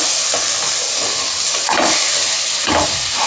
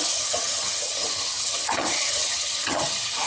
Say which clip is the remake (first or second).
second